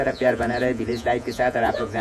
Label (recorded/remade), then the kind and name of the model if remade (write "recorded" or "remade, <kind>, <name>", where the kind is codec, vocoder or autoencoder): remade, vocoder, Vocos